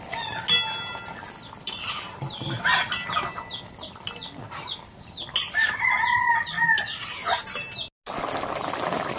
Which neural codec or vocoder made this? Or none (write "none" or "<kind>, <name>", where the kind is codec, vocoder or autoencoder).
none